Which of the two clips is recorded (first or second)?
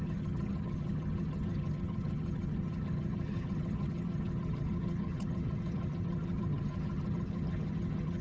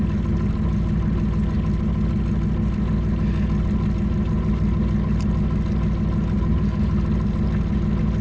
second